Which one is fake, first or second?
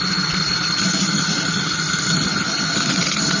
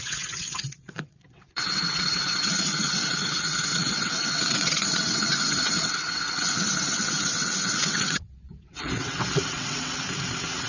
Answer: second